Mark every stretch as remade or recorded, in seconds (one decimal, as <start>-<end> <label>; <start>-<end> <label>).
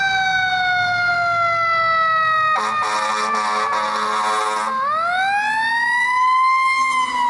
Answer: 0.0-7.3 recorded